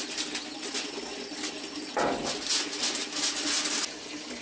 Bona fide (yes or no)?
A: yes